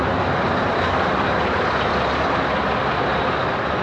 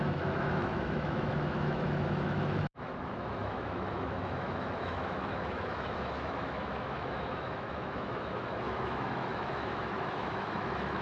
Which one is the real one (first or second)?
first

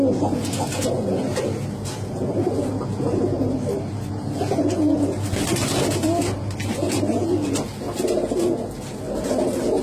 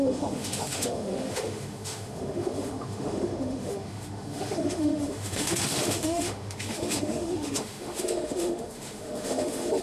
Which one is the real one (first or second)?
first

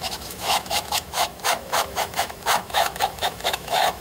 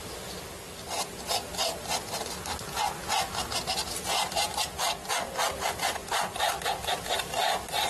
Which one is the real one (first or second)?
second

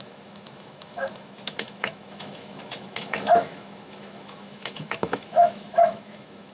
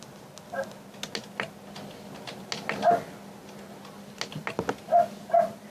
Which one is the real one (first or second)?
second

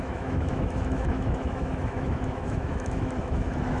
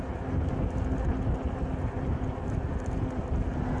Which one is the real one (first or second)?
second